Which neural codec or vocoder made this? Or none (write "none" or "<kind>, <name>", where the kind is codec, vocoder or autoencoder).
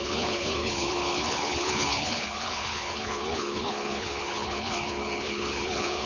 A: codec, HILCodec